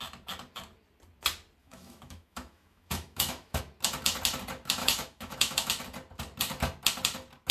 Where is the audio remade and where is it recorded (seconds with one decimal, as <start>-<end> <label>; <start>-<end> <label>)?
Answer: 0.0-1.6 recorded; 1.6-3.6 remade; 3.6-4.8 recorded; 4.8-5.7 remade; 5.7-7.5 recorded